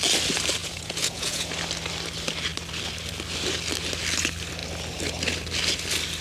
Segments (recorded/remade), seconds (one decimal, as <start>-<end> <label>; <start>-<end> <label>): 0.0-0.6 recorded; 0.6-1.5 remade; 1.5-6.2 recorded